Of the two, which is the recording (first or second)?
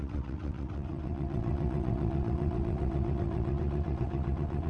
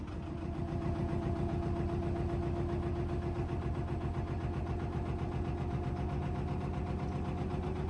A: second